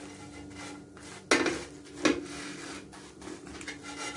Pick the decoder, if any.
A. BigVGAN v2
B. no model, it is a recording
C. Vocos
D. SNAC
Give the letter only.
B